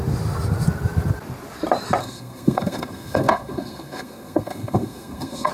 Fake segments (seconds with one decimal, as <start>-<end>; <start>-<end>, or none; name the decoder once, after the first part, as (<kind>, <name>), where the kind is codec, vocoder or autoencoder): 2.0-5.5 (codec, SNAC)